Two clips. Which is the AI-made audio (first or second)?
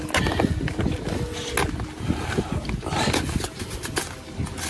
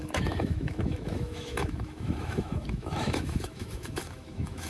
second